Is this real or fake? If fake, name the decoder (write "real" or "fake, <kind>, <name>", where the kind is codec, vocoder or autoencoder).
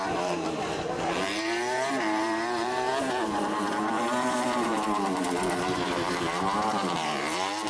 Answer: fake, vocoder, BigVGAN v2